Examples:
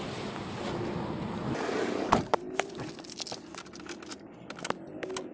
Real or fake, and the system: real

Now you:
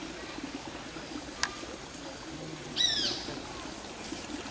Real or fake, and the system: real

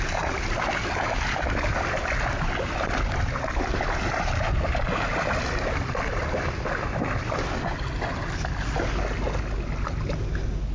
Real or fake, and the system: real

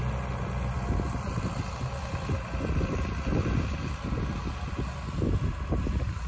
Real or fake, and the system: real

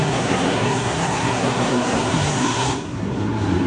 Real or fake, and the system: fake, codec, SNAC